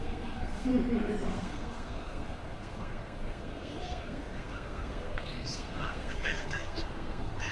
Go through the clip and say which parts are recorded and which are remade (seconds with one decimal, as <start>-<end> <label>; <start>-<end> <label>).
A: 0.0-0.7 remade; 0.7-1.3 recorded; 1.3-7.5 remade